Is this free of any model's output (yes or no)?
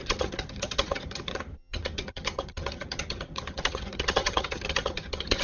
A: no